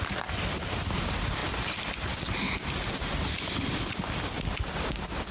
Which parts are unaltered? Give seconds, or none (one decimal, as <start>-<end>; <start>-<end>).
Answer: 0.0-5.3